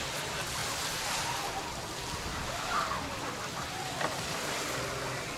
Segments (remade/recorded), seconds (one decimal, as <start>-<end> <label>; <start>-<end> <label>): 0.0-0.6 recorded; 0.6-1.6 remade; 1.6-2.3 recorded; 2.3-4.4 remade; 4.4-5.4 recorded